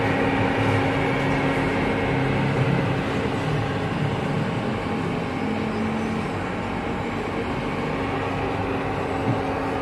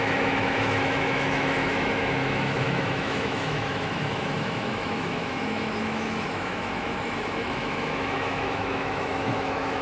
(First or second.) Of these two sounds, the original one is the first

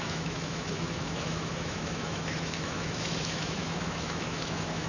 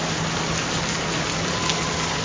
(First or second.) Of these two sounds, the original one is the second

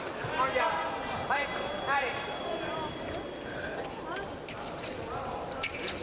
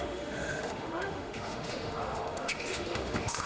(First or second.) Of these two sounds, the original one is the first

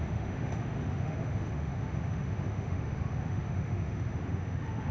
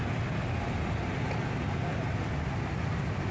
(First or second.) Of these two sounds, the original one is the second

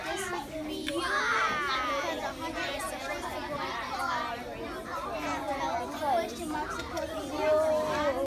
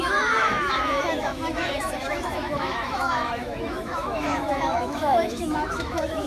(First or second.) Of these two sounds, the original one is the first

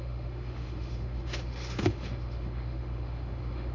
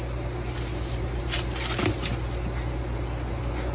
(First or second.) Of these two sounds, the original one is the second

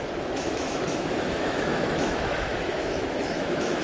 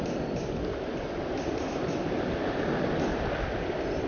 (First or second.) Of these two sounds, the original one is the second